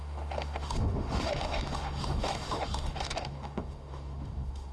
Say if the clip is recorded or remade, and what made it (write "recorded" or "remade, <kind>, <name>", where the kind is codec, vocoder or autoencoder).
remade, autoencoder, DAC-VAE